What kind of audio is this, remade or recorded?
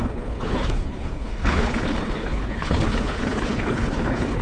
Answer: remade